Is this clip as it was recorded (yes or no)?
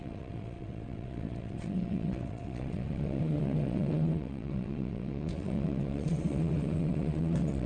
no